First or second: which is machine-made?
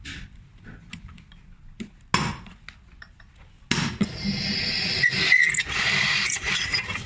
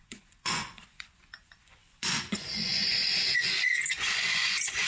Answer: second